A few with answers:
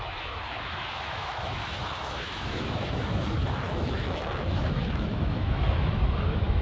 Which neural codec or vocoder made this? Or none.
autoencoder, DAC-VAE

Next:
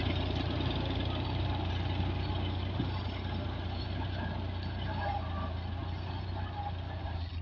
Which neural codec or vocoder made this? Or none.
none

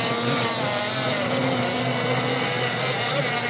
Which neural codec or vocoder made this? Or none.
none